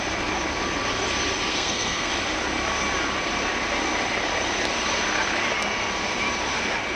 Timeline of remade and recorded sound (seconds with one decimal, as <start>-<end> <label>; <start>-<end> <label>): 0.0-1.5 recorded; 1.5-2.1 remade; 2.1-7.0 recorded